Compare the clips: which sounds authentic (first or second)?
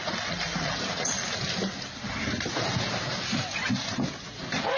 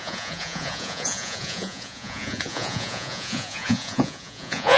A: first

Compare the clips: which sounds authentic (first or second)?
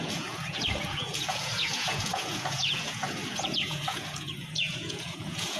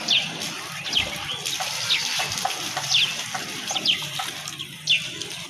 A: second